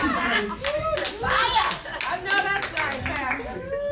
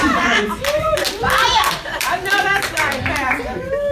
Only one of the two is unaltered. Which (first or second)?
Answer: first